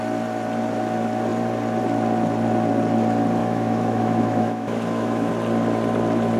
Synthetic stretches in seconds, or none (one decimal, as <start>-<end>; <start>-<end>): 3.4-5.3